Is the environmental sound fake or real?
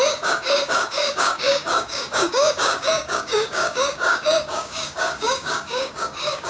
fake